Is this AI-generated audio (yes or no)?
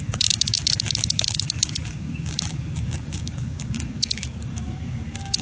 yes